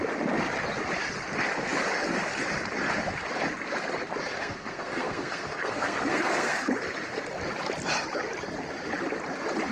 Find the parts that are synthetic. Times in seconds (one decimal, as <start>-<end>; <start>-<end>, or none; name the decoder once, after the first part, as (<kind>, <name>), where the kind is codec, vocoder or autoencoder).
4.4-6.6 (codec, SNAC)